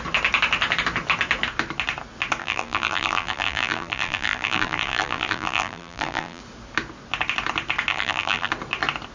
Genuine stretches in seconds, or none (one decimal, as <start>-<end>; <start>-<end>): 0.0-2.4; 6.4-7.9; 8.5-9.1